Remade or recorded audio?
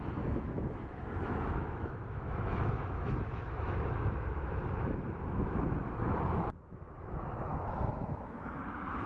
remade